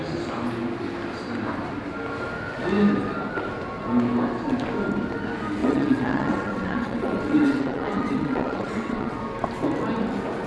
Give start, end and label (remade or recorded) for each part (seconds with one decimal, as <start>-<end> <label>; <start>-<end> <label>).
0.0-5.6 recorded; 5.6-9.2 remade; 9.2-10.5 recorded